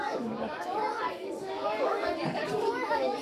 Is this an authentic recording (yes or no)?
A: no